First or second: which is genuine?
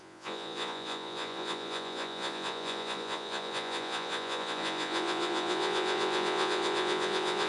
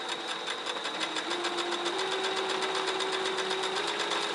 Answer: second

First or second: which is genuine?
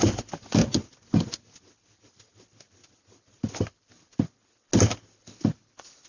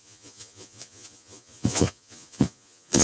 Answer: first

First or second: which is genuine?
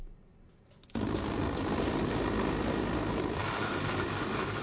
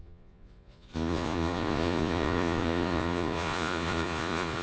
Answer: first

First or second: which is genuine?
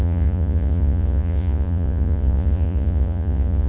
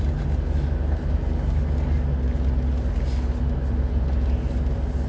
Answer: second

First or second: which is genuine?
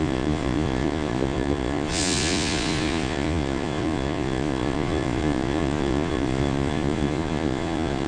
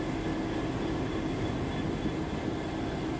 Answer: second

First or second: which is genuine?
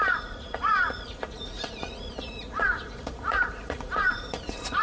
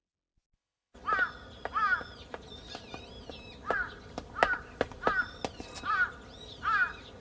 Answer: second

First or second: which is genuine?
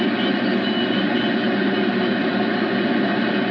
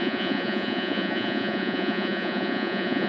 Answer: first